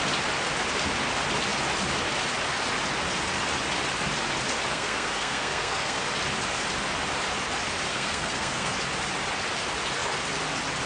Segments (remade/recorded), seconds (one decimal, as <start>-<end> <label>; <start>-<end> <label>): 0.0-4.7 recorded; 4.7-6.0 remade; 6.0-7.9 recorded; 7.9-8.7 remade; 8.7-10.9 recorded